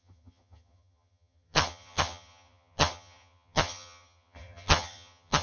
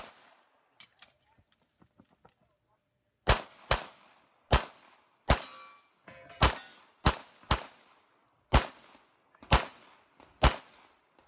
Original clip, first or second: second